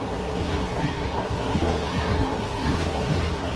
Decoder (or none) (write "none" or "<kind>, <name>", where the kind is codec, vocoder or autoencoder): codec, SNAC